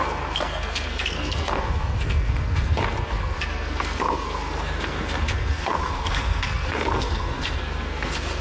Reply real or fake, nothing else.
fake